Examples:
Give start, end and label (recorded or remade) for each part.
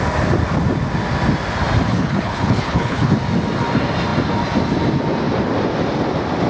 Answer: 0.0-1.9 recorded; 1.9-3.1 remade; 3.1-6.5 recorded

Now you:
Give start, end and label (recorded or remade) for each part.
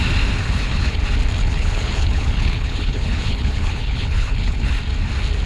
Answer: 0.0-0.4 recorded; 0.4-1.0 remade; 1.0-1.4 recorded; 1.4-4.7 remade; 4.7-5.5 recorded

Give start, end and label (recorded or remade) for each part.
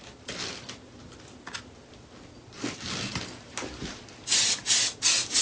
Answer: 0.0-5.4 recorded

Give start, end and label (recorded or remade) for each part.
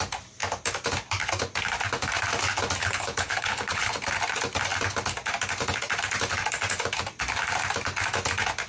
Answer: 0.0-2.8 recorded; 2.8-3.9 remade; 3.9-8.7 recorded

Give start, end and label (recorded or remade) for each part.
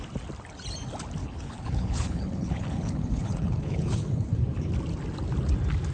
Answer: 0.0-1.2 recorded; 1.2-4.7 remade; 4.7-5.9 recorded